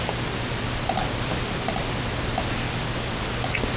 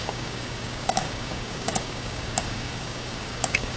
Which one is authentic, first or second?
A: first